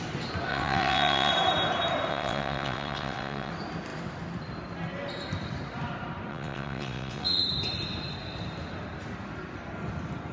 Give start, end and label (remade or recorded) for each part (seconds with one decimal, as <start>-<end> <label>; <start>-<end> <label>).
0.0-0.5 recorded; 0.5-1.3 remade; 1.3-2.1 recorded; 2.1-3.5 remade; 3.5-6.3 recorded; 6.3-7.4 remade; 7.4-10.3 recorded